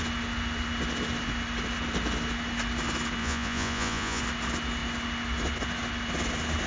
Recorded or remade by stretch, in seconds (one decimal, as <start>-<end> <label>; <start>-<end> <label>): 0.0-3.2 recorded; 3.2-4.2 remade; 4.2-6.7 recorded